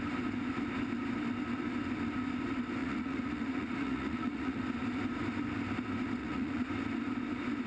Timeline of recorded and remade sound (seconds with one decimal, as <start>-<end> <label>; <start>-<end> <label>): 0.0-2.8 recorded; 2.8-4.6 remade; 4.6-6.2 recorded; 6.2-6.7 remade; 6.7-7.7 recorded